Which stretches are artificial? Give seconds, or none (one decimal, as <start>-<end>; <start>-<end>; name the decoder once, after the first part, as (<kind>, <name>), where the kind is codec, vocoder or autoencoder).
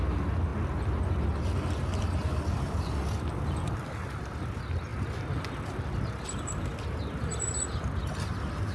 none